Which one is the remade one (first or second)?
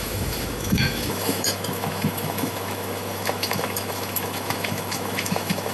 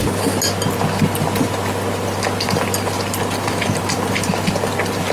first